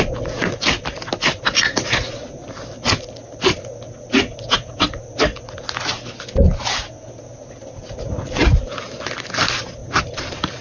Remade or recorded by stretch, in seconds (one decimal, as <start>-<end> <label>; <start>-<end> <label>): 0.0-8.4 recorded; 8.4-9.1 remade; 9.1-9.8 recorded; 9.8-10.6 remade